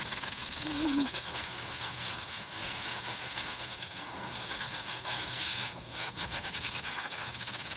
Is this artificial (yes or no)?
yes